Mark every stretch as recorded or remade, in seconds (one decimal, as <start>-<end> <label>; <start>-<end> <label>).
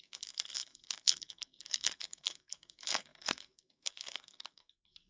0.0-5.1 remade